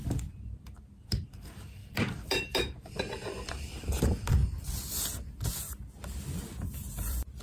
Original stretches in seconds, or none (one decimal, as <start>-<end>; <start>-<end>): 4.4-6.4